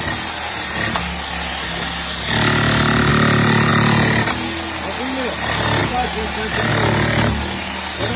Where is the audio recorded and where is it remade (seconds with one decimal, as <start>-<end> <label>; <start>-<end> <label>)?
0.0-8.2 recorded